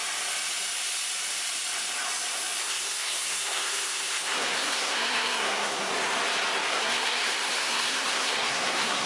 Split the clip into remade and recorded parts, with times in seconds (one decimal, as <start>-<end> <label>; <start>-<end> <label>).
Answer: 0.0-2.6 recorded; 2.6-5.9 remade; 5.9-6.7 recorded; 6.7-9.1 remade